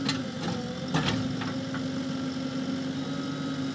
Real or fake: real